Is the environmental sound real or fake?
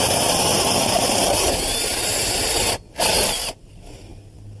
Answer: real